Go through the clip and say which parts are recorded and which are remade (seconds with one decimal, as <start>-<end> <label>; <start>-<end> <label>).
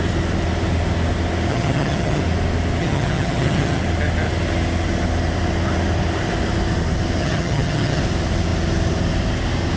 0.0-1.5 recorded; 1.5-2.2 remade; 2.2-2.8 recorded; 2.8-3.8 remade; 3.8-7.2 recorded; 7.2-8.0 remade; 8.0-9.8 recorded